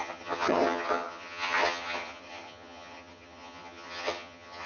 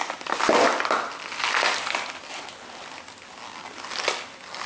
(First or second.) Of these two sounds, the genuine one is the second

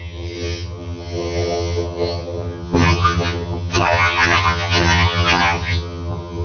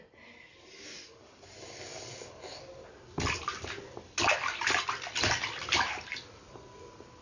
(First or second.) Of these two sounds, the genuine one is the second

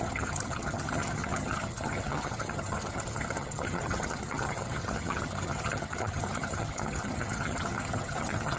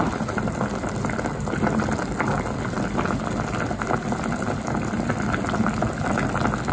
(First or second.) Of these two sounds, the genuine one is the second